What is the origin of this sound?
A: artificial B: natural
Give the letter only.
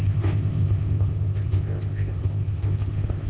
A